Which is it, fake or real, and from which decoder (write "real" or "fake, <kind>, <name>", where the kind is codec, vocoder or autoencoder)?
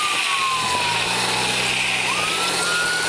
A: real